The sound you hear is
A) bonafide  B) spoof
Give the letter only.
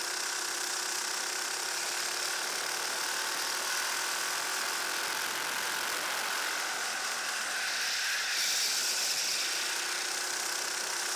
A